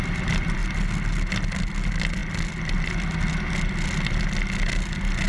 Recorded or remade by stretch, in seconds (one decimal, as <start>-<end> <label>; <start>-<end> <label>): 0.0-5.3 recorded